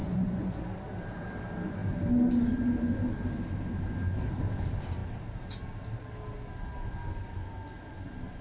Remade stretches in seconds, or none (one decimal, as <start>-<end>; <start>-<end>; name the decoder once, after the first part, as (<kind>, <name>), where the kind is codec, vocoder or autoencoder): 0.0-0.6 (vocoder, Vocos)